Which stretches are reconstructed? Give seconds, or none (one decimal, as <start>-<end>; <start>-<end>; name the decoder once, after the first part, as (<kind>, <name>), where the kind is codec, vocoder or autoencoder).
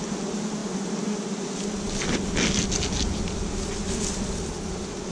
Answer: none